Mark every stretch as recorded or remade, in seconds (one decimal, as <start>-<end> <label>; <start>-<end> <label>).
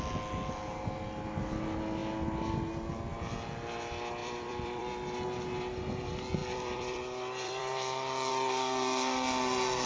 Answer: 0.0-4.2 recorded; 4.2-4.9 remade; 4.9-6.4 recorded; 6.4-8.3 remade; 8.3-9.9 recorded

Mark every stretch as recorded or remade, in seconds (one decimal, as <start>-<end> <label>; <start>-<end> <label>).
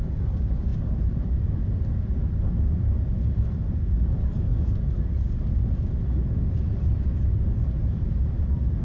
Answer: 0.0-0.7 recorded; 0.7-1.6 remade; 1.6-8.8 recorded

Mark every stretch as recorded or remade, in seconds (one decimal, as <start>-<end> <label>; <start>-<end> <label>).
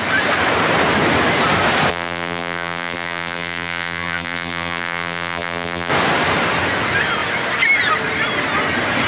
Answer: 0.0-1.9 recorded; 1.9-5.9 remade; 5.9-9.1 recorded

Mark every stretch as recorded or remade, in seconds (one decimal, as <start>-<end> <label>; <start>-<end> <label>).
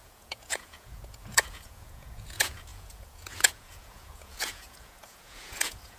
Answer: 0.0-6.0 remade